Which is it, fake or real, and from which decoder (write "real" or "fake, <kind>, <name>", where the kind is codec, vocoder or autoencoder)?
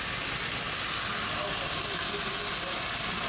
real